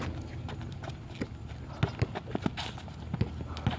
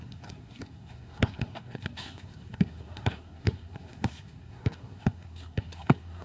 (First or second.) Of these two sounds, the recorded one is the first